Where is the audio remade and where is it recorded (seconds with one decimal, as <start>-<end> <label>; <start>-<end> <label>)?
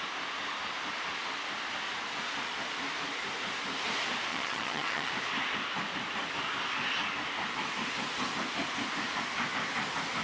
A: 0.0-4.3 recorded; 4.3-5.1 remade; 5.1-10.2 recorded